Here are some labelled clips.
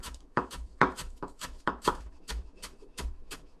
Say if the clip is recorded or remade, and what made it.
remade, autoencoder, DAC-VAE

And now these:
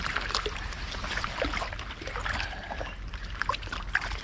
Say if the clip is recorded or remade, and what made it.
recorded